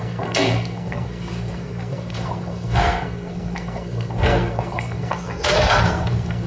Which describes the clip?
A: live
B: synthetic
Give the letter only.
B